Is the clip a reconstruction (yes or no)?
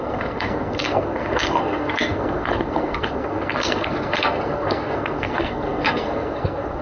yes